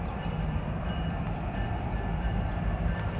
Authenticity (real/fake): fake